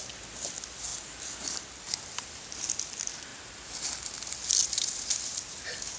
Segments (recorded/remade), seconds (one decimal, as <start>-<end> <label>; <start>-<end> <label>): 0.0-6.0 recorded